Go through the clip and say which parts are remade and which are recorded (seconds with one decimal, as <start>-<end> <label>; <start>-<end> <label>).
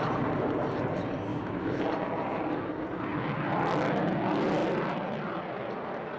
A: 0.0-1.3 recorded; 1.3-1.8 remade; 1.8-6.2 recorded